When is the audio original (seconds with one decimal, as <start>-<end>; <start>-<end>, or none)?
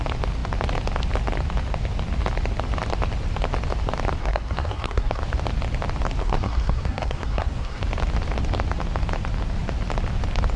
0.0-4.2; 5.2-6.2; 7.8-10.6